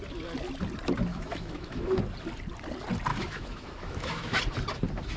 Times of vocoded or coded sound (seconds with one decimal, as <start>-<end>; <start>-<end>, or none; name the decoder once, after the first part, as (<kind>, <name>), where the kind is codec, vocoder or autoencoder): 1.1-2.0 (autoencoder, DAC-VAE); 3.1-4.4

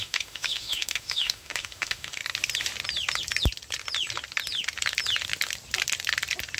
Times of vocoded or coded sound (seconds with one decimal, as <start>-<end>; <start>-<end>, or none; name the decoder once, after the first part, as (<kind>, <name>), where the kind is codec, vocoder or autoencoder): 0.0-2.2 (autoencoder, DAC-VAE)

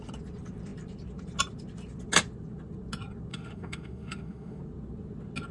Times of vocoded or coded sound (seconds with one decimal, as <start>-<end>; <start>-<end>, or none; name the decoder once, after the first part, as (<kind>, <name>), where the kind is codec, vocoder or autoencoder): 3.3-4.6 (autoencoder, DAC-VAE)

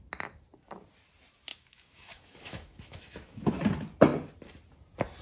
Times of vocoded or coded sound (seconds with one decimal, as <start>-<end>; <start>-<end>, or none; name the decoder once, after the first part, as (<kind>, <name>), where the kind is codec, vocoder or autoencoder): 1.5-3.5 (autoencoder, DAC-VAE)

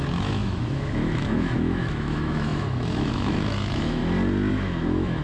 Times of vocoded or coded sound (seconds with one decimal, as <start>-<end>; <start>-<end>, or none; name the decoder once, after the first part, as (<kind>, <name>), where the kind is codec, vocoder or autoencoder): 0.0-4.0 (autoencoder, DAC-VAE); 4.5-5.2

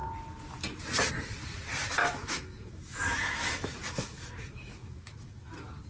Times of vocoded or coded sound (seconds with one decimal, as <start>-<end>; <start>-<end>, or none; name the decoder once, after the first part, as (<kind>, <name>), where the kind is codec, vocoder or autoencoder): 2.0-5.5 (autoencoder, DAC-VAE)